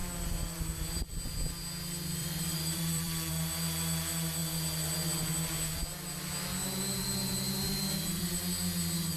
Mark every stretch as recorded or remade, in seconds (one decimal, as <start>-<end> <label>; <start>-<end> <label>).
0.0-2.2 recorded; 2.2-3.3 remade; 3.3-7.0 recorded; 7.0-8.4 remade; 8.4-9.2 recorded